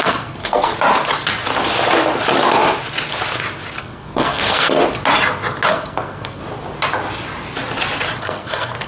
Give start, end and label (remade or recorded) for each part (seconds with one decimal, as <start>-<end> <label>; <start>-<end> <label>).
0.0-0.7 remade; 0.7-3.8 recorded; 3.8-4.8 remade; 4.8-5.7 recorded; 5.7-6.4 remade; 6.4-8.2 recorded; 8.2-8.9 remade